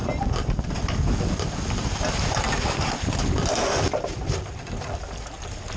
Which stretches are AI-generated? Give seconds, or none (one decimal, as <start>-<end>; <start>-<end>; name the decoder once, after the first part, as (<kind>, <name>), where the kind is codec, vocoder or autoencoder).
none